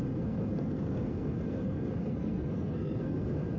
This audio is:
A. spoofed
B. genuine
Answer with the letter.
A